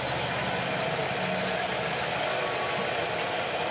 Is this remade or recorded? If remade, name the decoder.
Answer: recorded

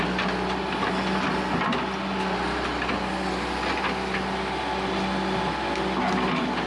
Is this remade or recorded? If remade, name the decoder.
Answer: recorded